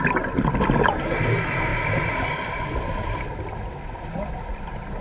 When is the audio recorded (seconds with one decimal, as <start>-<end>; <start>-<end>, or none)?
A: 0.0-5.0